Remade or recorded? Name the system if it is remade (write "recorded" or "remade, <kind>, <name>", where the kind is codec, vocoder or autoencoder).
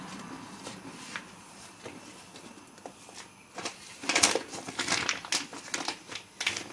recorded